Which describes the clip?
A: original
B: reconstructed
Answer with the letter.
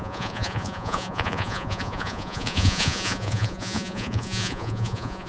B